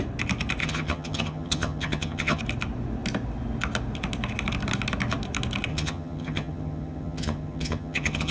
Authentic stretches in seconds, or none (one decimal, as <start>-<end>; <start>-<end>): 0.0-0.6; 2.4-5.7